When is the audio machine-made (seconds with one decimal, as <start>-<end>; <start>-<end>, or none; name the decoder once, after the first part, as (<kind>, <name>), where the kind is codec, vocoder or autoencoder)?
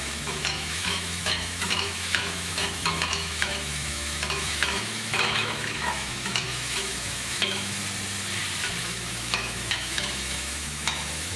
0.0-7.8 (autoencoder, DAC-VAE); 8.8-11.4